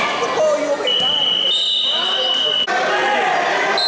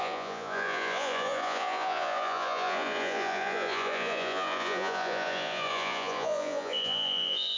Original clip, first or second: first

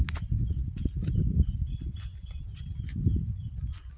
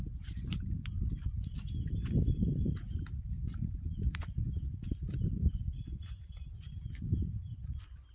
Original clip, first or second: first